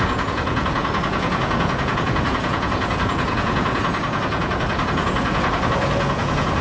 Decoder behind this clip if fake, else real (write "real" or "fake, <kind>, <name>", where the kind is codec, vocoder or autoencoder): fake, vocoder, Vocos